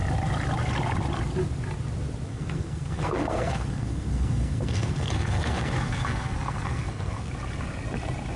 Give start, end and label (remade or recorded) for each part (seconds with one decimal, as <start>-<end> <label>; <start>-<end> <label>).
0.0-2.3 recorded; 2.3-7.3 remade; 7.3-8.4 recorded